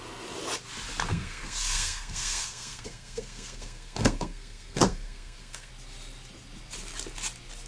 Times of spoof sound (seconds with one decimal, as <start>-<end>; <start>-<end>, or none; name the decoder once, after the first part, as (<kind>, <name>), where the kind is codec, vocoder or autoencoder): 1.1-5.7 (codec, SNAC)